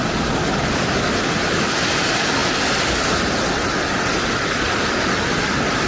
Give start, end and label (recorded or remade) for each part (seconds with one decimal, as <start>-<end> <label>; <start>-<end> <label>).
0.0-5.9 recorded